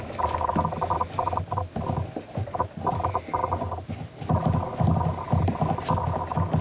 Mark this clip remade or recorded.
recorded